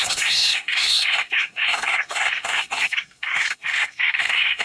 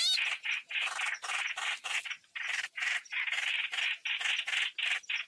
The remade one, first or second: first